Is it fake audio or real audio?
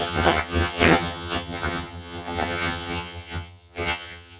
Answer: fake